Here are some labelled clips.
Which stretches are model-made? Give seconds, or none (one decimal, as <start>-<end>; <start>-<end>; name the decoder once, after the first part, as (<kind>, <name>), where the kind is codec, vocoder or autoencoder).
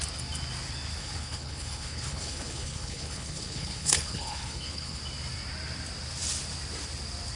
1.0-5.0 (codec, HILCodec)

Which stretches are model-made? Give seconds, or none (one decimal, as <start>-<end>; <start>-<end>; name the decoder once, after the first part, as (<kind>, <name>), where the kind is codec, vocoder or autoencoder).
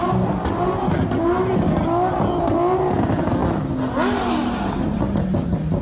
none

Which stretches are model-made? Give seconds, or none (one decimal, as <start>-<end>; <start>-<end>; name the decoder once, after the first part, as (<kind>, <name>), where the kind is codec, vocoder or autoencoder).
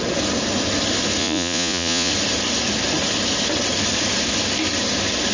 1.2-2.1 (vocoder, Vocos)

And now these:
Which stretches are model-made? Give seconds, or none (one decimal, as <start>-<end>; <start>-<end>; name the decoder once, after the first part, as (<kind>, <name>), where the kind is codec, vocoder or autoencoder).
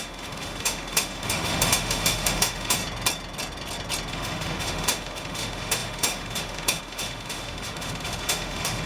0.0-2.8 (autoencoder, DAC-VAE); 4.1-8.9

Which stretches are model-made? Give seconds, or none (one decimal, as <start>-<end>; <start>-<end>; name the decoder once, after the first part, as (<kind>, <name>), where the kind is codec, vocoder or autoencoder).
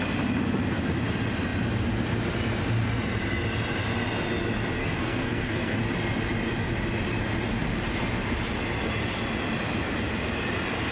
4.8-5.8 (codec, SNAC)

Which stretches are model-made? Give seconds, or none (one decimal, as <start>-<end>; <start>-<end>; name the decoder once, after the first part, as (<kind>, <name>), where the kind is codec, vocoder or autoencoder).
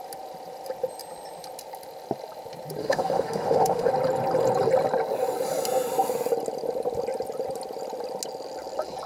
2.8-3.9 (autoencoder, DAC-VAE)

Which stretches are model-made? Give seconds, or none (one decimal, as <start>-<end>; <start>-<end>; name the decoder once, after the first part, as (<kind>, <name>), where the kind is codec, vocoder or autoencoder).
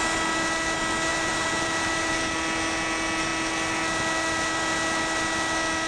1.1-2.1 (vocoder, BigVGAN v2)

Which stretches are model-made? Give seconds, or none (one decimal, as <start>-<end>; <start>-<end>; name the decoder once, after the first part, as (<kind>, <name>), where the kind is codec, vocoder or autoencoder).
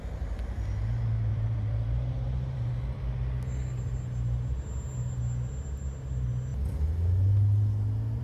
1.3-2.7 (vocoder, BigVGAN v2)